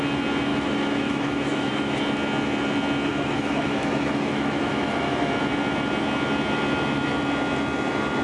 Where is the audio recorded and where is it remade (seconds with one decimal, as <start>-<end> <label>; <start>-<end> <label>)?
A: 0.0-0.5 recorded; 0.5-2.0 remade; 2.0-3.1 recorded; 3.1-5.3 remade; 5.3-8.2 recorded